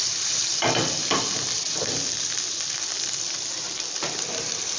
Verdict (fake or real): fake